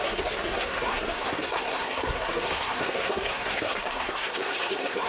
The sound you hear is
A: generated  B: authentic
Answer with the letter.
A